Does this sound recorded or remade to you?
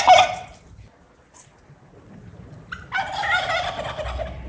recorded